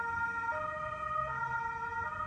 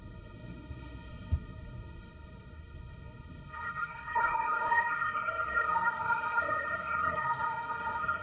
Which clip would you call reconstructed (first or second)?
second